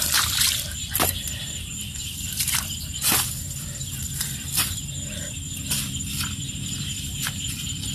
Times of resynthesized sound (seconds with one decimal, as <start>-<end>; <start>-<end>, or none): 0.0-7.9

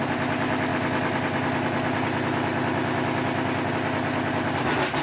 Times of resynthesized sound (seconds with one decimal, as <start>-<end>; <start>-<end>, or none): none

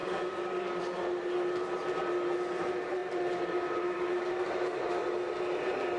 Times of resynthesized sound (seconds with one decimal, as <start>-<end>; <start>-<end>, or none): 0.0-0.8

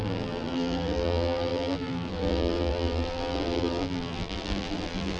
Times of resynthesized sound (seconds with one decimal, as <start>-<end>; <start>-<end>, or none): 0.0-5.2

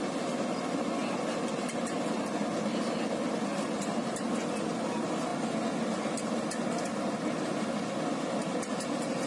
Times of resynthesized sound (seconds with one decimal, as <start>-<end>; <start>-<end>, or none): 3.5-4.3

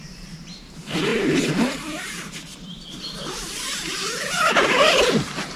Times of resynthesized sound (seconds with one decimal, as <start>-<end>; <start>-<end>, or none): 0.0-5.6

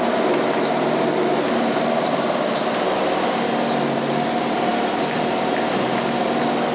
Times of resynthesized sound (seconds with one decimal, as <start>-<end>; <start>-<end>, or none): 0.0-6.7